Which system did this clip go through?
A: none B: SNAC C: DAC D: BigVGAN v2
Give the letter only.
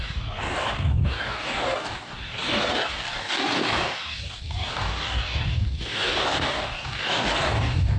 C